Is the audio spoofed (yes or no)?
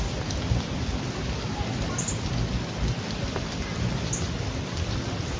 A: no